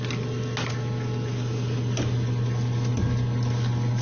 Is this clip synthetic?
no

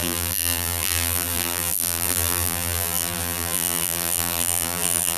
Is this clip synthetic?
yes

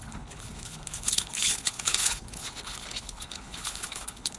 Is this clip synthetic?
yes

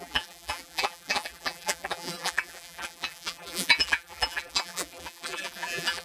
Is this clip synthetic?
yes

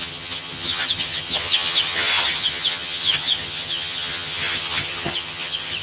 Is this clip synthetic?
yes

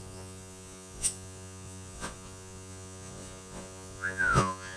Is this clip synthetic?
yes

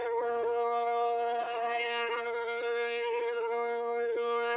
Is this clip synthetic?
yes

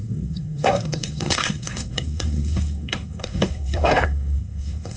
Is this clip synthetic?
yes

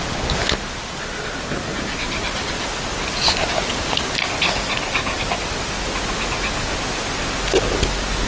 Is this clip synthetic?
no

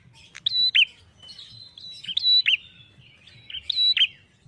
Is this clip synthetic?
no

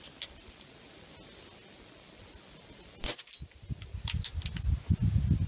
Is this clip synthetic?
no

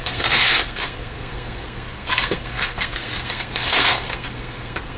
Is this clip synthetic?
yes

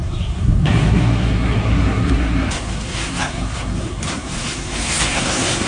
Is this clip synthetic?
yes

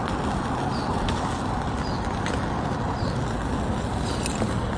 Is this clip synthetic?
no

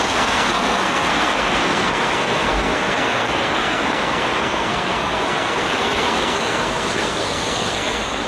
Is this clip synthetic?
yes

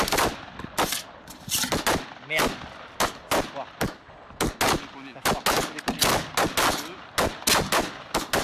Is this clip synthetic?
no